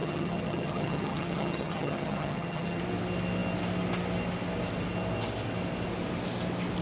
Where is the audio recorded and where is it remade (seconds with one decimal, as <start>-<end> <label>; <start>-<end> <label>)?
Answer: 0.0-2.8 remade; 2.8-6.8 recorded